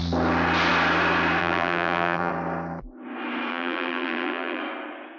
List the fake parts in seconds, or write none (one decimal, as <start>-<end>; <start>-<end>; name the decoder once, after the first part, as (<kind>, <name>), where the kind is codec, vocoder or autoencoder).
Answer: 1.4-2.3 (vocoder, BigVGAN v2); 3.5-4.6